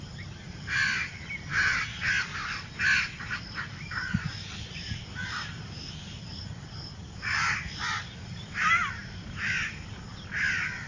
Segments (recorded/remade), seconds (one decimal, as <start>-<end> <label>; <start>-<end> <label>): 0.0-1.5 recorded; 1.5-2.1 remade; 2.1-10.9 recorded